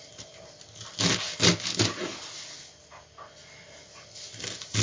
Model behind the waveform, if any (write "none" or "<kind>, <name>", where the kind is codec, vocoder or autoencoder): none